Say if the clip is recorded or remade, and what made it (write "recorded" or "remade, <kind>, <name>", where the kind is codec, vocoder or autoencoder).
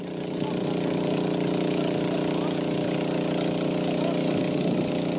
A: recorded